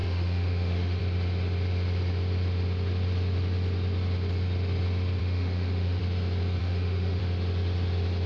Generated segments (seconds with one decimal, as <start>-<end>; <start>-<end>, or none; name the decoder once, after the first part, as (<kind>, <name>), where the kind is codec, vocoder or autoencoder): 0.0-1.0 (autoencoder, DAC-VAE); 5.2-6.0; 6.6-7.2